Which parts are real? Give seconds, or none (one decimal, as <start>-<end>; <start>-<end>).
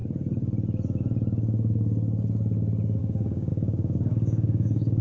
0.0-3.0